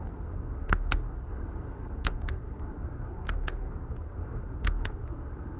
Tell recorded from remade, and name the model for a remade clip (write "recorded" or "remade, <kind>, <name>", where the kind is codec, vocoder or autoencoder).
remade, codec, SNAC